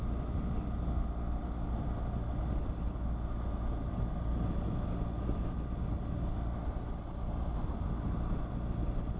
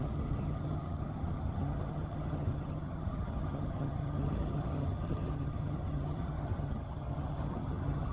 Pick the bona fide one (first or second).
first